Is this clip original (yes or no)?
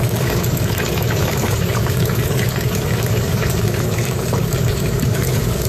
no